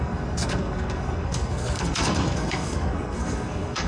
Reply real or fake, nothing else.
fake